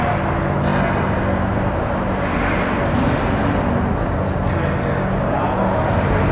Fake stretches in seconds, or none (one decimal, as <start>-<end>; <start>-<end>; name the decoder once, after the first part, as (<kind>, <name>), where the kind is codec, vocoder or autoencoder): none